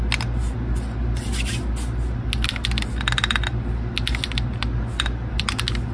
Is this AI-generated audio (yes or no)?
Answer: no